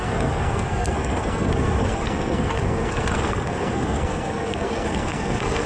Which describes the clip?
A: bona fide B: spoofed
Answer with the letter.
B